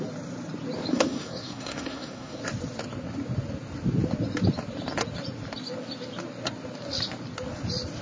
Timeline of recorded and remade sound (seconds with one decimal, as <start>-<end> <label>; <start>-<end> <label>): 0.0-0.9 recorded; 0.9-2.4 remade; 2.4-8.0 recorded